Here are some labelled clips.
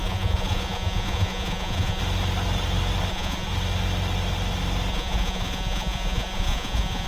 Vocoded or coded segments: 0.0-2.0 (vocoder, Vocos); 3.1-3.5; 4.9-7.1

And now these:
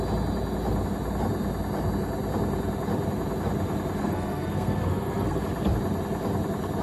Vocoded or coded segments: 4.0-5.4 (codec, SNAC)

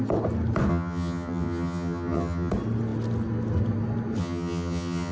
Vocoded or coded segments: 0.7-2.5 (vocoder, HiFi-GAN); 4.2-5.1

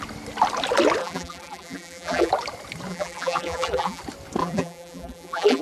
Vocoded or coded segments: 1.0-2.3 (vocoder, BigVGAN v2); 2.9-4.0; 4.4-5.6

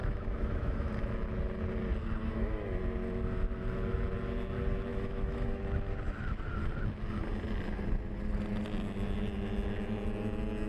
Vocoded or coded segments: 0.0-0.9 (autoencoder, DAC-VAE); 2.2-2.8; 4.9-5.6

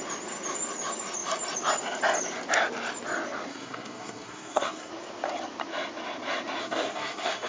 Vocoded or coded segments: 3.5-4.9 (codec, SNAC); 6.6-7.5

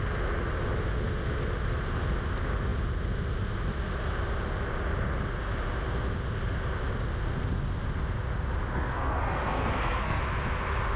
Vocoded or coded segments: 8.7-10.2 (codec, SNAC)